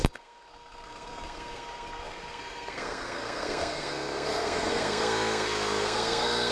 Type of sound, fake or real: fake